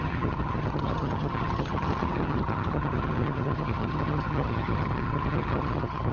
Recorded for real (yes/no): no